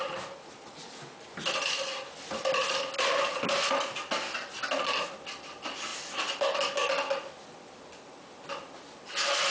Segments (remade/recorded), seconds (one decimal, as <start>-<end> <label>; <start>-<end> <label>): 0.0-9.5 recorded